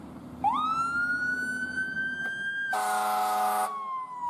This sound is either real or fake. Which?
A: real